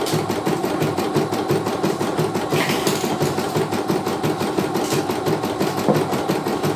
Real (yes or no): no